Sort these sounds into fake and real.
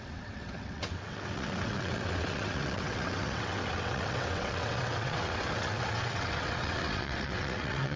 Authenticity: fake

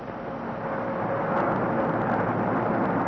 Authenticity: real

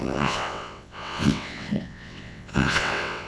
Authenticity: fake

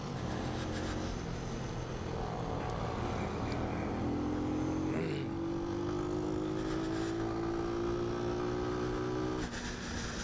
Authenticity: real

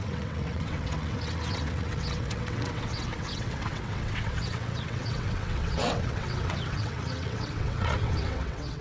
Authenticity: fake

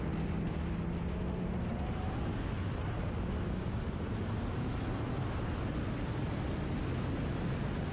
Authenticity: real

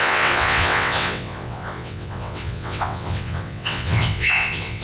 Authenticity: fake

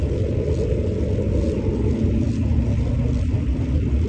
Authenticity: real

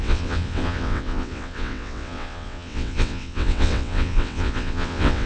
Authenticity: fake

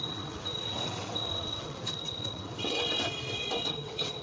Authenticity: fake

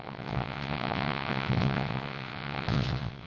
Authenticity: fake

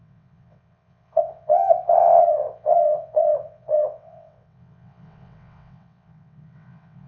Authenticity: fake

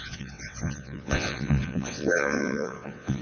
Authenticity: fake